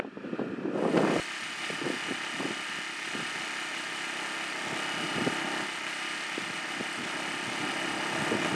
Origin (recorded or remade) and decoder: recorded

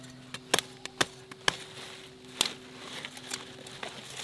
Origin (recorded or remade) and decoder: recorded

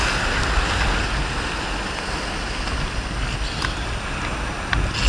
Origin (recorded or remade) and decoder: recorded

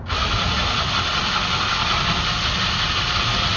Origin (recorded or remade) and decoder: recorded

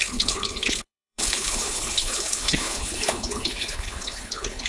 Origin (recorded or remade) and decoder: remade, codec, HILCodec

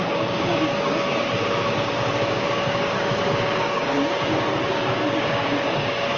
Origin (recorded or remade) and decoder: remade, codec, DAC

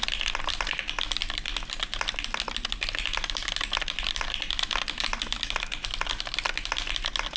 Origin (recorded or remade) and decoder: recorded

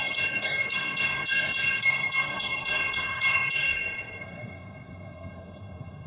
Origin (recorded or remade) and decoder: remade, codec, SNAC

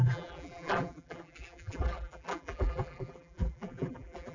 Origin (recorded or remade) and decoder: remade, vocoder, BigVGAN v2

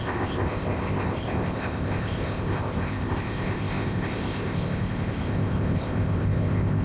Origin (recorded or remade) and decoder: remade, codec, ZipCodec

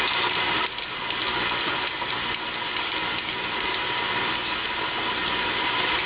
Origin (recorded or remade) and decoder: recorded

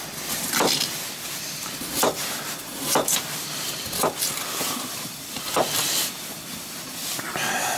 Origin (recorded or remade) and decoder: remade, vocoder, BigVGAN v2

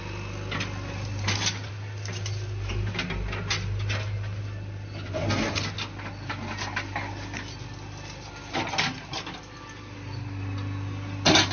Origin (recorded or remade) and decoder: recorded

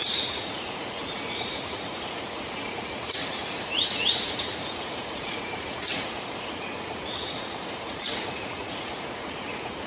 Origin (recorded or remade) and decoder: remade, vocoder, Vocos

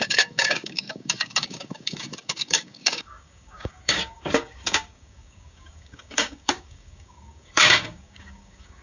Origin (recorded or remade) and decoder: remade, codec, DAC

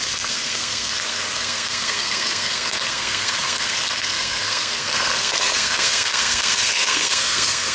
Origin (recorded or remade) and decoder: remade, codec, SNAC